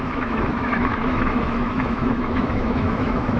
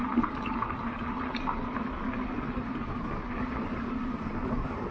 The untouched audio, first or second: second